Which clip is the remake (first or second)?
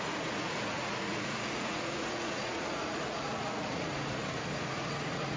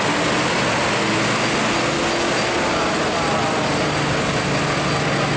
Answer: first